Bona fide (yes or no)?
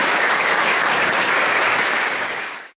no